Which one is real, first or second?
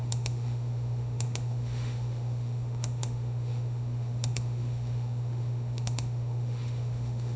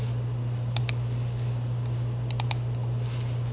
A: second